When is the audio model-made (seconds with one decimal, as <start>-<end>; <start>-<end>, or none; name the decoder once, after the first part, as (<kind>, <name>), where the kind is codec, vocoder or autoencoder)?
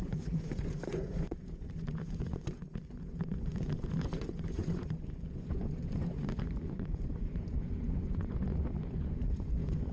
0.0-9.9 (vocoder, Vocos)